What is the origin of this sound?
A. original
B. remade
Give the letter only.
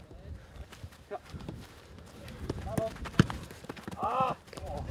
B